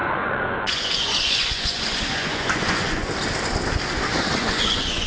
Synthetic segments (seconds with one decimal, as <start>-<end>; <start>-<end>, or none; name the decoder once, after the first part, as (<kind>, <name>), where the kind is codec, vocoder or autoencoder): 0.0-3.1 (vocoder, Vocos); 4.4-5.1